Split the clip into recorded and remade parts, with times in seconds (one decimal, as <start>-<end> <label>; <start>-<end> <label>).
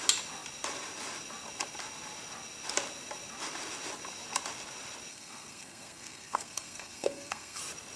0.0-5.1 recorded; 5.1-7.6 remade; 7.6-8.0 recorded